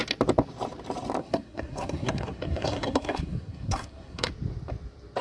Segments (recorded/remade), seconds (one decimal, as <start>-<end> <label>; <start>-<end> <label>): 0.0-1.2 recorded; 1.2-4.3 remade; 4.3-5.2 recorded